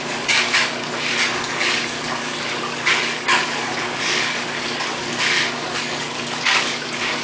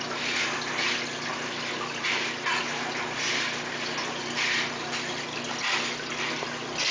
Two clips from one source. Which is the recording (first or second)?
second